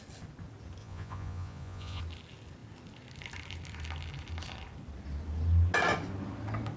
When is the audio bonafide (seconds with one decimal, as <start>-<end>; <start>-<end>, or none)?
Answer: 0.0-0.8; 2.0-6.8